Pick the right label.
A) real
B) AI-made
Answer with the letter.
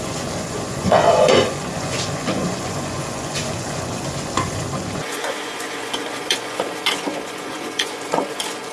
B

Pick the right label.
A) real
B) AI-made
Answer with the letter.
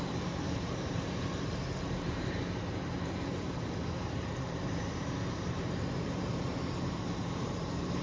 B